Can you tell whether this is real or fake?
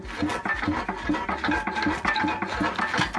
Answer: real